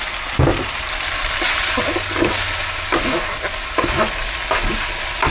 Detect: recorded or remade recorded